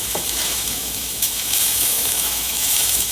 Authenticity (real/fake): fake